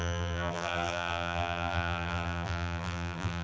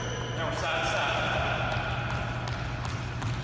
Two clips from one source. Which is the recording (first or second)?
second